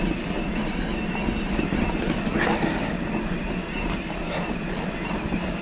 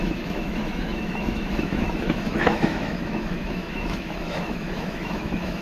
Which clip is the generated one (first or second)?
second